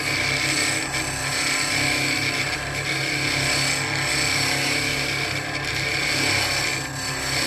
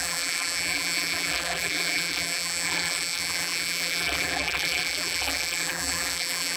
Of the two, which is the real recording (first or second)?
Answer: first